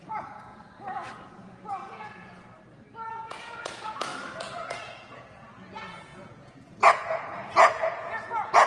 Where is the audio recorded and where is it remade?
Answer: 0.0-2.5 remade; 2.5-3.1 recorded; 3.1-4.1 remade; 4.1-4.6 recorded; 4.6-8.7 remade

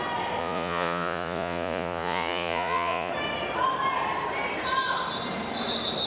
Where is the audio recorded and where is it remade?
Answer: 0.0-0.4 recorded; 0.4-3.1 remade; 3.1-6.1 recorded

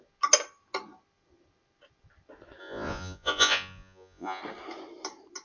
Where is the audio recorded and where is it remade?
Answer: 0.0-2.6 recorded; 2.6-4.4 remade; 4.4-5.4 recorded

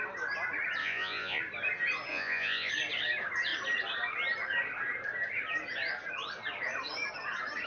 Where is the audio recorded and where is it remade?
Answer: 0.0-0.8 recorded; 0.8-1.4 remade; 1.4-2.1 recorded; 2.1-2.7 remade; 2.7-7.7 recorded